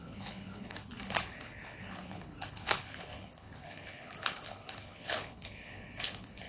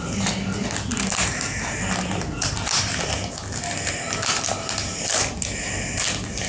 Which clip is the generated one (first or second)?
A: first